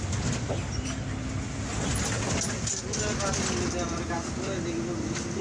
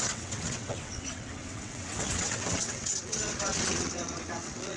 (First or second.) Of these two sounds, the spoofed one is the second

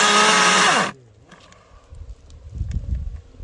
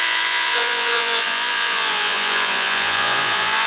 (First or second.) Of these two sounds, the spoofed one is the second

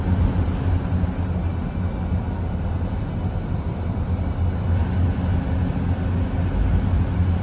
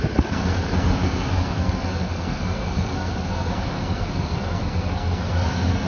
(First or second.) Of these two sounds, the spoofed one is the second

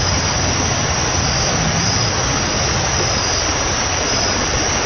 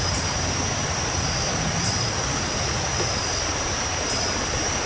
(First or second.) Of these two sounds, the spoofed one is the second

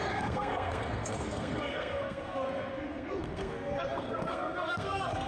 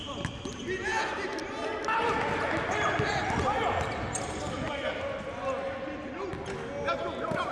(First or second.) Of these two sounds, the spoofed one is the first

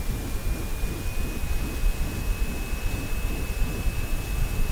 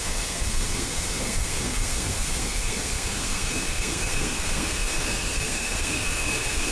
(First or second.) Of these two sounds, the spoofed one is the second